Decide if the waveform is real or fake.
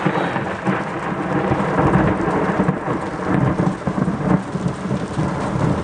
real